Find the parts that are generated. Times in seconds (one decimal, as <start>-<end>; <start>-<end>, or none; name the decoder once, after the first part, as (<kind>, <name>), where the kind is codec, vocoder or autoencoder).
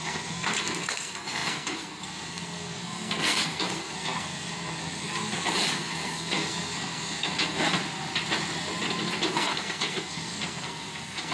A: 0.0-7.8 (codec, SNAC); 9.3-11.3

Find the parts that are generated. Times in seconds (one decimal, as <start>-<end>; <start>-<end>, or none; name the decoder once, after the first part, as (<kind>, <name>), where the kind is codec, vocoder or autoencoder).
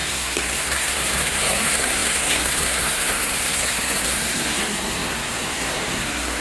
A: 0.0-6.4 (codec, SNAC)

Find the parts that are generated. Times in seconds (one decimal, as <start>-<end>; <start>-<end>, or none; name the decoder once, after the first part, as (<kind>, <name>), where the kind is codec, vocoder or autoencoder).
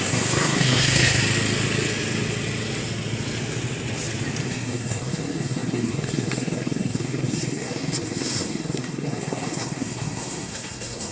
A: 0.0-1.2 (codec, SNAC); 4.4-11.1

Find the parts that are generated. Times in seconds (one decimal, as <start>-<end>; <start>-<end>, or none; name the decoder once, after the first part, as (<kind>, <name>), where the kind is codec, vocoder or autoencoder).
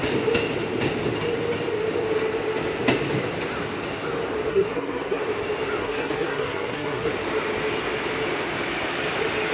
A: 4.5-5.2 (codec, SNAC); 5.8-7.1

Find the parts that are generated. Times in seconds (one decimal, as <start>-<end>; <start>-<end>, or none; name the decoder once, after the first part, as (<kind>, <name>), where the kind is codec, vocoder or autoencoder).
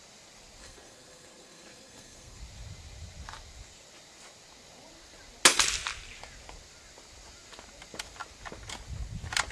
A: 0.6-2.4 (codec, SNAC)